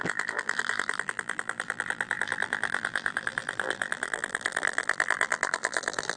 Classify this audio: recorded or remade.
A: remade